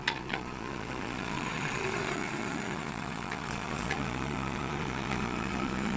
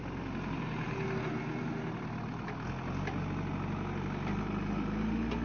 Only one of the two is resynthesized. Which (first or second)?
first